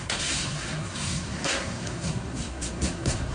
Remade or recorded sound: remade